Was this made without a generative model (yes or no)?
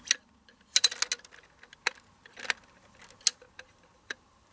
yes